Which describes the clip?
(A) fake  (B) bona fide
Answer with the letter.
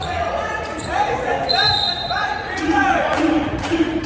A